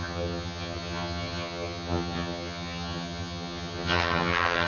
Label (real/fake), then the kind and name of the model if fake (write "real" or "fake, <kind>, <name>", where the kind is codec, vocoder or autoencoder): fake, vocoder, HiFi-GAN